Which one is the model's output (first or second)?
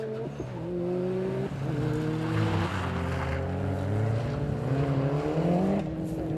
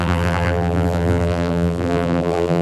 second